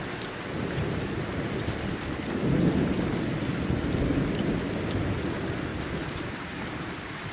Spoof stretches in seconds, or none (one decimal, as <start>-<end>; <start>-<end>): none